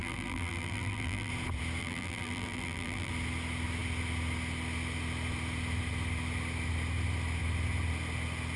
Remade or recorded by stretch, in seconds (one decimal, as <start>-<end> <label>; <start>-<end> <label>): 0.0-1.3 remade; 1.3-1.8 recorded; 1.8-3.1 remade; 3.1-8.6 recorded